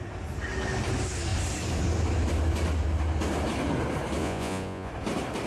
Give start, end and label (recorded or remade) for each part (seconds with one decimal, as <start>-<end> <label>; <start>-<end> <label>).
0.0-4.2 recorded; 4.2-4.9 remade; 4.9-5.5 recorded